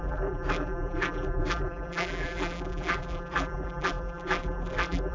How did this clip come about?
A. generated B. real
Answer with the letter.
A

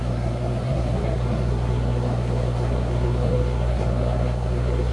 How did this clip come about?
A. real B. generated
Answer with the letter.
B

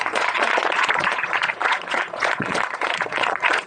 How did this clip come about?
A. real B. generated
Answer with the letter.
B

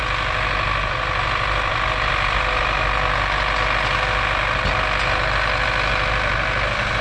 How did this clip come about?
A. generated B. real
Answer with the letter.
B